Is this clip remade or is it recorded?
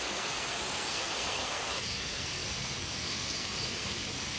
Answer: remade